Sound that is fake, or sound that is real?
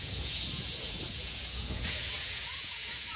fake